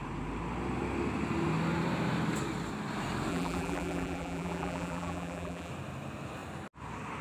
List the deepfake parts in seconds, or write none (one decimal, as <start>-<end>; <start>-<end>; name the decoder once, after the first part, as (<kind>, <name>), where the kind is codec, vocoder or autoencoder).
3.3-5.7 (vocoder, BigVGAN v2)